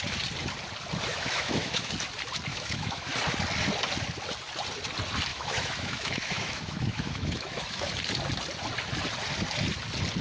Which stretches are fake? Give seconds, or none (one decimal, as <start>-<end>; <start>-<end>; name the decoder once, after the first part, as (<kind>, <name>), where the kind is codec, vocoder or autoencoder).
1.1-1.9 (autoencoder, DAC-VAE); 2.5-3.1; 5.3-7.9